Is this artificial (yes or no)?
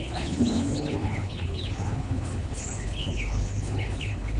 yes